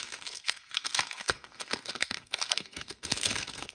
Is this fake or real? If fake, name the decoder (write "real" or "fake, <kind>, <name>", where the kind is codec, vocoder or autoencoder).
fake, codec, SNAC